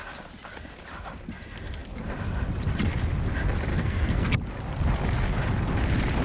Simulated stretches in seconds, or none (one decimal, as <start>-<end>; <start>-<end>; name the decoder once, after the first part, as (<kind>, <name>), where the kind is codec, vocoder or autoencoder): 3.7-4.4 (codec, SNAC)